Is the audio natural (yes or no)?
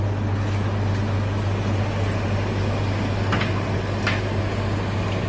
yes